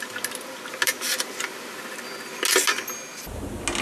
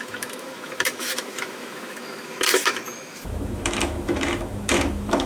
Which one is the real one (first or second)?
first